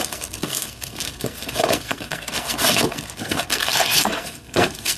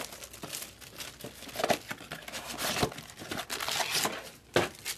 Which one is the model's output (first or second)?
first